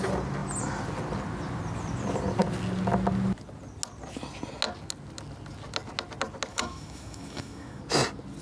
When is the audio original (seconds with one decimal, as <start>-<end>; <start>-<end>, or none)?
0.0-6.5; 7.8-8.4

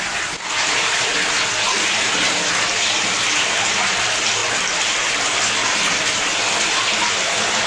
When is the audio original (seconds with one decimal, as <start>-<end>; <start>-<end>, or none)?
0.0-7.7

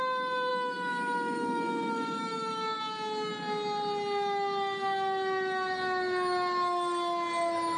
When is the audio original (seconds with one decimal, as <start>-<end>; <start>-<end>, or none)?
0.0-0.5; 2.8-7.8

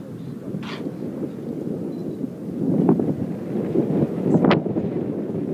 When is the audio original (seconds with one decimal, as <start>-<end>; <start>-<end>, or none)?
0.0-5.5

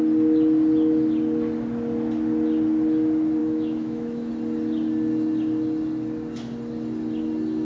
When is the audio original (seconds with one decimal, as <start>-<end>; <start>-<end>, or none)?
0.0-3.4; 4.3-7.6

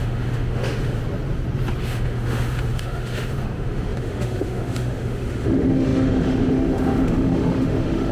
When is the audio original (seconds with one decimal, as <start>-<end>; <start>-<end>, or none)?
1.0-1.8

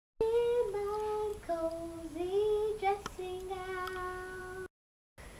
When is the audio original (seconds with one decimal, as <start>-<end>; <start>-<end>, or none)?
0.0-5.4